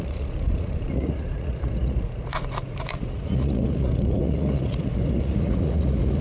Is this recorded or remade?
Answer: remade